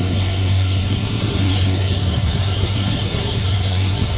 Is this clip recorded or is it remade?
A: remade